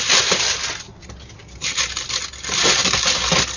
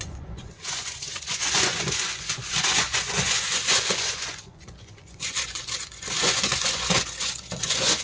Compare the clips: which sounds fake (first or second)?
second